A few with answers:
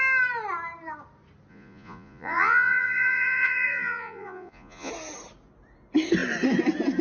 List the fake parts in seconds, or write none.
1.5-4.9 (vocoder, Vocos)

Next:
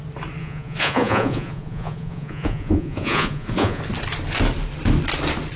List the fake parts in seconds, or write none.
0.4-3.8 (vocoder, Vocos)

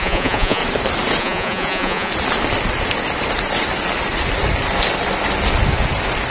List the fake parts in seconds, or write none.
0.0-0.6 (vocoder, Vocos); 1.2-2.1